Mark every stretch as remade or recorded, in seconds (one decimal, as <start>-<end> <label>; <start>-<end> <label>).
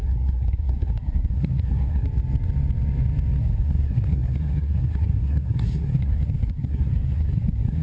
0.0-2.1 remade; 2.1-3.4 recorded; 3.4-7.8 remade